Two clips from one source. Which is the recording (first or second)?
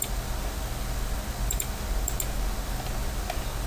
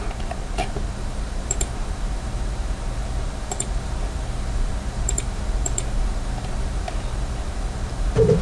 first